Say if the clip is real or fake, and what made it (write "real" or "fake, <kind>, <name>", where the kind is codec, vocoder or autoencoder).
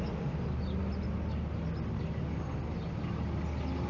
real